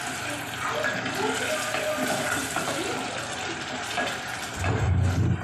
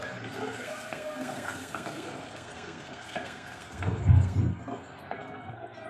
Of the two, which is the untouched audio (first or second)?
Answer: first